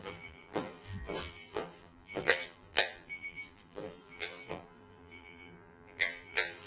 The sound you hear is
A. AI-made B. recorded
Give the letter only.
A